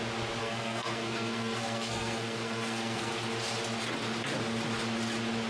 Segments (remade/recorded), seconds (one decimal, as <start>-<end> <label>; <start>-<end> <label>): 0.0-0.4 recorded; 0.4-3.1 remade; 3.1-5.5 recorded